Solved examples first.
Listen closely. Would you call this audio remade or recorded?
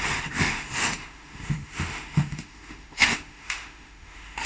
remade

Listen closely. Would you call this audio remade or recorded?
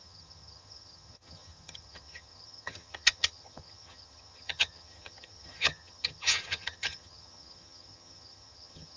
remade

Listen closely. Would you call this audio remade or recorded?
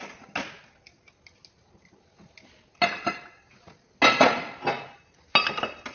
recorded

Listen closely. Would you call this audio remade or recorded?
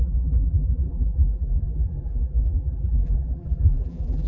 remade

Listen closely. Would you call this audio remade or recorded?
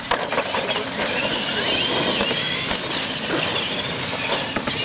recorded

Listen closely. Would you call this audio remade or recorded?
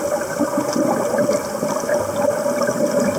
recorded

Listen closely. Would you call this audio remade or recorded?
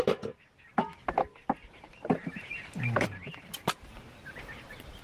remade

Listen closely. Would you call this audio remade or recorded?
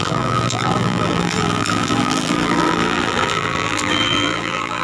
remade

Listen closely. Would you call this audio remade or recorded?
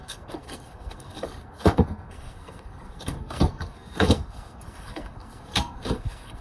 remade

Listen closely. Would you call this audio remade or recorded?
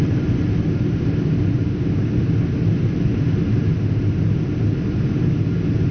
recorded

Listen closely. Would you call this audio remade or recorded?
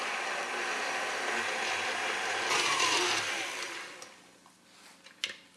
recorded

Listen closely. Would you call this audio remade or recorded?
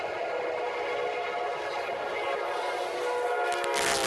recorded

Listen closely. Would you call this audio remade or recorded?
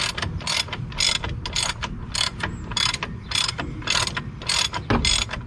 recorded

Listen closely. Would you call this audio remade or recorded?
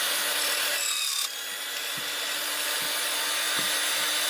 recorded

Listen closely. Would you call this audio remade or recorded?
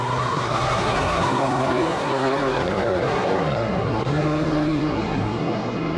remade